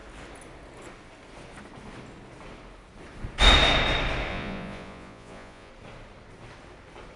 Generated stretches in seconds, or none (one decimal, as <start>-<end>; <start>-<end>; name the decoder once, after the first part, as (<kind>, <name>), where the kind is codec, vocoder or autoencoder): 4.3-5.7 (vocoder, Vocos)